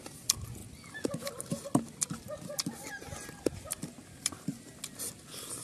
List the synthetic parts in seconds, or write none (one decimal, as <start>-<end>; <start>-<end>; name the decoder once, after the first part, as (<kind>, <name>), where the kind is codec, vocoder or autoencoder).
3.8-4.7 (vocoder, BigVGAN v2)